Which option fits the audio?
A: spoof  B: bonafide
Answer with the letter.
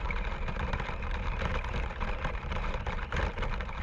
A